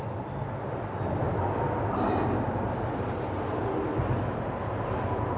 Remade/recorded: recorded